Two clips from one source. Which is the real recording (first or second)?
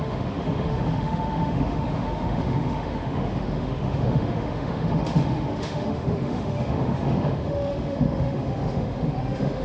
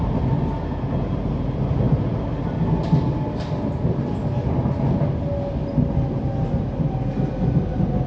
second